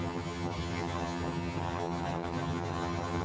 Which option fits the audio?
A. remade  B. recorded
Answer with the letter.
A